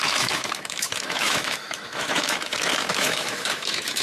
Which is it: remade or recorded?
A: remade